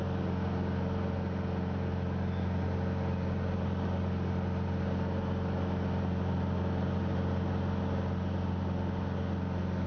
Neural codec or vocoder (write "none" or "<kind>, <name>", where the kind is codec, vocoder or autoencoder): none